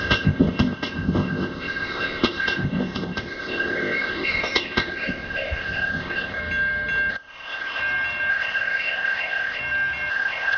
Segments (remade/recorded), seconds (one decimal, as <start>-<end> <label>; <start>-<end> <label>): 0.0-6.4 remade; 6.4-7.1 recorded; 7.1-7.8 remade; 7.8-8.3 recorded; 8.3-9.6 remade; 9.6-10.1 recorded; 10.1-10.6 remade